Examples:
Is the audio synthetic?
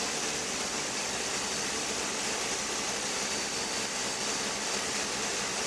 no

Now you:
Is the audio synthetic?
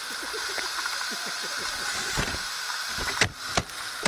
yes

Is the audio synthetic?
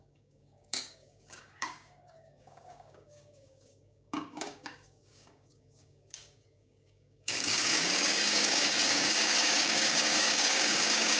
yes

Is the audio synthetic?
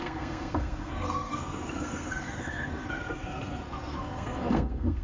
yes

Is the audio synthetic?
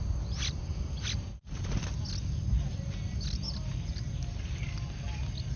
no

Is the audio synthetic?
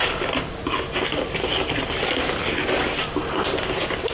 no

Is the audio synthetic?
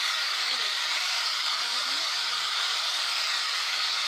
yes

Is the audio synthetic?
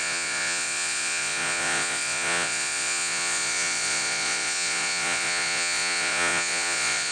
yes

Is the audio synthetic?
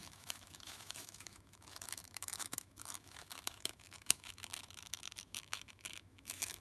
yes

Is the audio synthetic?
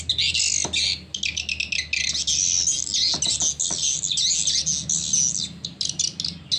no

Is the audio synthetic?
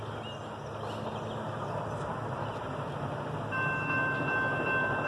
no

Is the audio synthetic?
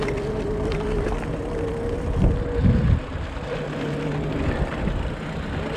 no